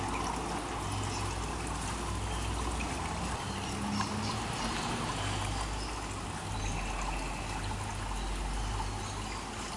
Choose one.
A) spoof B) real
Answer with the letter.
B